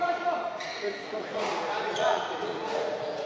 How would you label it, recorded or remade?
remade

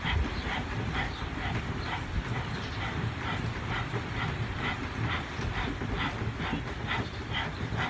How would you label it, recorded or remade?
recorded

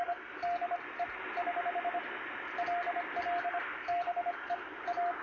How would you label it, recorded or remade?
recorded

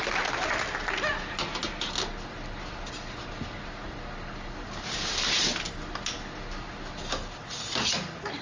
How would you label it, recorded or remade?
recorded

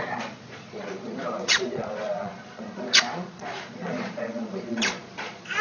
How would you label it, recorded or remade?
remade